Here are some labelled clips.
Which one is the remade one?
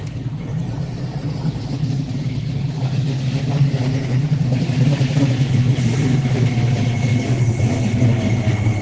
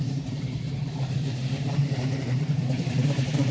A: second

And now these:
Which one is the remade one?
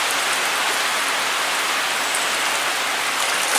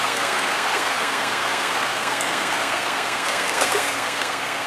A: second